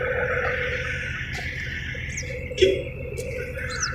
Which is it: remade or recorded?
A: recorded